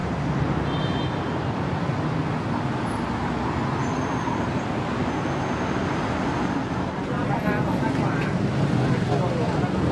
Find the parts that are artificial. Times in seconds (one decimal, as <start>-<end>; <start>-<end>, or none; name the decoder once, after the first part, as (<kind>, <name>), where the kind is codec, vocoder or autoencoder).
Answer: none